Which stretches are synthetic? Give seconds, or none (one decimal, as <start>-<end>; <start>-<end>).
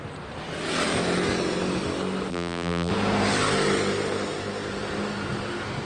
2.3-2.9